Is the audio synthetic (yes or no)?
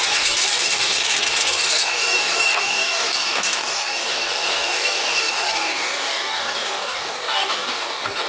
yes